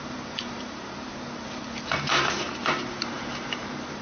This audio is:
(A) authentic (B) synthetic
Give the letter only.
B